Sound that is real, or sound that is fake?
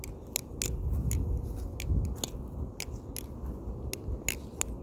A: real